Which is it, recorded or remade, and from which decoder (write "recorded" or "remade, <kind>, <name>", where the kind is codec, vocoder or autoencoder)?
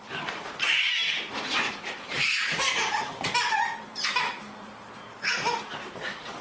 remade, vocoder, BigVGAN v2